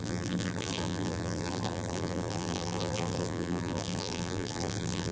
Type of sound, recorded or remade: remade